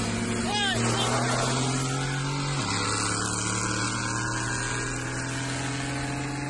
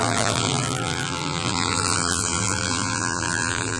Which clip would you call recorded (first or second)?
first